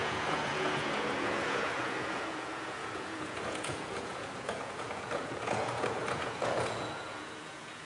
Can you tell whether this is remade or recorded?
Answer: remade